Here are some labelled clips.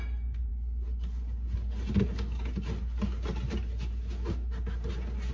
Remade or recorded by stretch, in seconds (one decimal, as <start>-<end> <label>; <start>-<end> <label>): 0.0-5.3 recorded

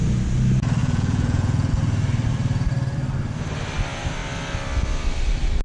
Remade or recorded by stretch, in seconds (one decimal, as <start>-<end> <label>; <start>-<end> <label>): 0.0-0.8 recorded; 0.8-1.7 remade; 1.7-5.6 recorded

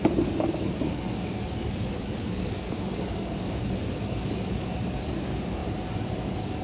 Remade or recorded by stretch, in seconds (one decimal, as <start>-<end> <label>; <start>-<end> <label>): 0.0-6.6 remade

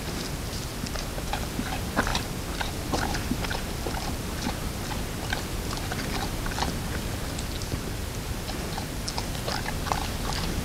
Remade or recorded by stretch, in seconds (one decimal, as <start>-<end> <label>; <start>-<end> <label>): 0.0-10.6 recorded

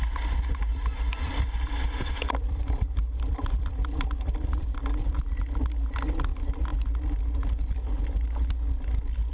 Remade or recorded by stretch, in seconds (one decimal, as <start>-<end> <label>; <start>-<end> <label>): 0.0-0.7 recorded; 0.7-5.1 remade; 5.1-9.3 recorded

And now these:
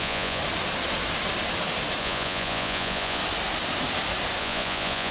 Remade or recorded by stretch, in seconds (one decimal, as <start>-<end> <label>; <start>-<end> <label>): 0.0-0.4 remade; 0.4-2.0 recorded; 2.0-3.2 remade; 3.2-4.4 recorded; 4.4-5.1 remade